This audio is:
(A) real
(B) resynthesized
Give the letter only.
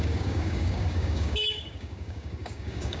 B